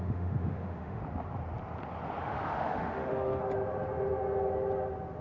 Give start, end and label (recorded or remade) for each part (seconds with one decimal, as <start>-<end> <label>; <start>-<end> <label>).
0.0-1.0 remade; 1.0-2.2 recorded; 2.2-3.4 remade; 3.4-5.2 recorded